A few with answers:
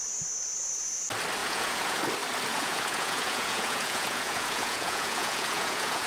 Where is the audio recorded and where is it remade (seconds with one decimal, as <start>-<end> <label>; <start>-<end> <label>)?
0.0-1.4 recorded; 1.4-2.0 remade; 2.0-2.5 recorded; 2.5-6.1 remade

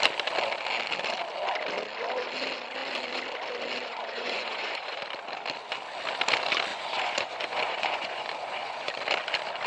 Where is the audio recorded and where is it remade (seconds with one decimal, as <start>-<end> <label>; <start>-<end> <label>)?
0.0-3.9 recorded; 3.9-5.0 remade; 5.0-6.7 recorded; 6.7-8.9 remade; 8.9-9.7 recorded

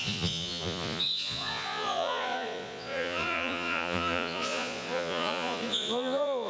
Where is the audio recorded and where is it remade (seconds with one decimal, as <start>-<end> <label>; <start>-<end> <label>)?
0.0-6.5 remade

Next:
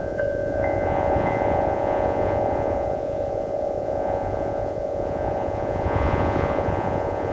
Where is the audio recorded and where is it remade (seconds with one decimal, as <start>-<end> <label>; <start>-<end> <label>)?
0.0-7.3 remade